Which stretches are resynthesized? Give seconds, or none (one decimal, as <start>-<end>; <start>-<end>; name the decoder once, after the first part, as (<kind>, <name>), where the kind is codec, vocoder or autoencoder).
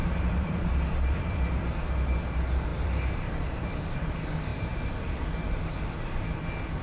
0.0-1.9 (vocoder, BigVGAN v2); 2.7-4.1